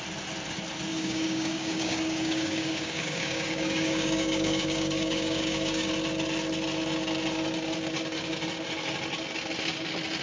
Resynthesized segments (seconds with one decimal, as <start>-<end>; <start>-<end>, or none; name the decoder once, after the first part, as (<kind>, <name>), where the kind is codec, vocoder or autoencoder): 0.9-5.9 (codec, DAC)